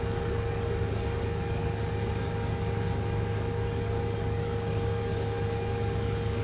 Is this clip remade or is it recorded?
remade